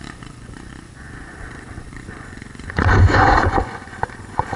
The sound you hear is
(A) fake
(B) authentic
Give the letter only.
A